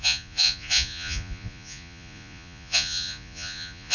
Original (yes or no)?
no